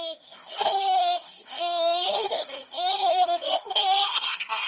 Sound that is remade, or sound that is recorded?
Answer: remade